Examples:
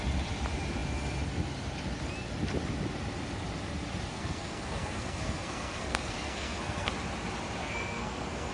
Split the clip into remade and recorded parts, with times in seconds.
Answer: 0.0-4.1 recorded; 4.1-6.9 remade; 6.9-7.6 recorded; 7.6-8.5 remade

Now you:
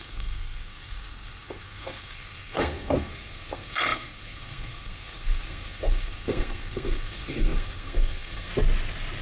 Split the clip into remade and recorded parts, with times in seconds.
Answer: 0.0-8.5 remade; 8.5-9.2 recorded

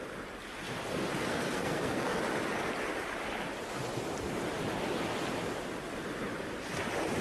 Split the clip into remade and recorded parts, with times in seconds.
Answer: 0.0-1.2 recorded; 1.2-2.2 remade; 2.2-7.2 recorded

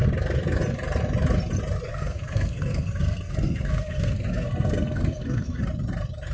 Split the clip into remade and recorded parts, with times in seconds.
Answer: 0.0-1.9 recorded; 1.9-5.7 remade; 5.7-6.3 recorded